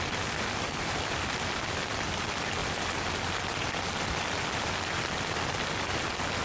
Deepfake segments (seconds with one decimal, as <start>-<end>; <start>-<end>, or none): none